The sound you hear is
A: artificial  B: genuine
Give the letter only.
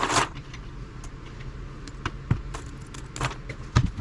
B